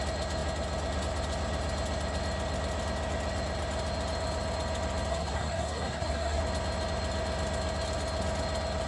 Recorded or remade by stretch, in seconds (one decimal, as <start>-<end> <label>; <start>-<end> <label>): 0.0-5.1 recorded; 5.1-6.4 remade; 6.4-8.9 recorded